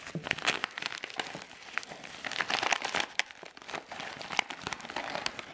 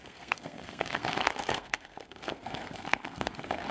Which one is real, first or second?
first